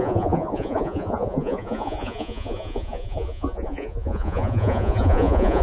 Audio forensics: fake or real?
fake